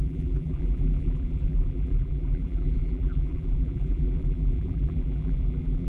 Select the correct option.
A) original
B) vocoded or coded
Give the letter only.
B